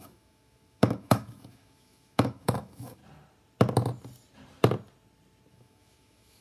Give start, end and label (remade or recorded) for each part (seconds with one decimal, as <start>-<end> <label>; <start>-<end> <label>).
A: 0.0-3.0 remade; 3.0-5.5 recorded; 5.5-6.4 remade